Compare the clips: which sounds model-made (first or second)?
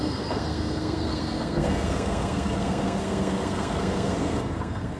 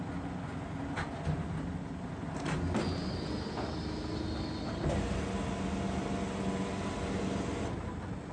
first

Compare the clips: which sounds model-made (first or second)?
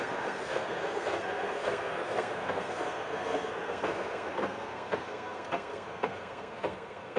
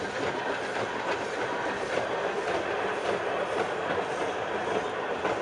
first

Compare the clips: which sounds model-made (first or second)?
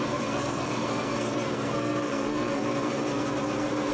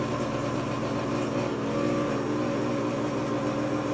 first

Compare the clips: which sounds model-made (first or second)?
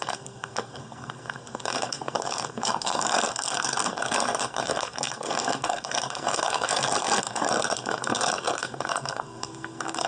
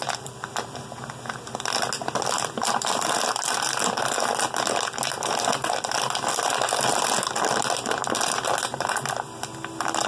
first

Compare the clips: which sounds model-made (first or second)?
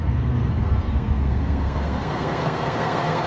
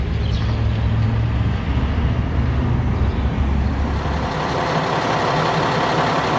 first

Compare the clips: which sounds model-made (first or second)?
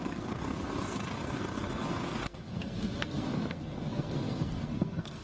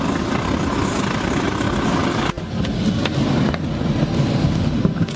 first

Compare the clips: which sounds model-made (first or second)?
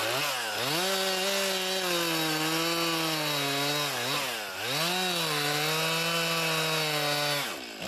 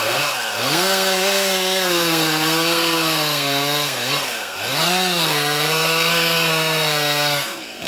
second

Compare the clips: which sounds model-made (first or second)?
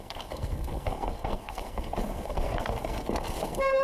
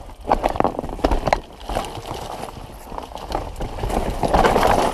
first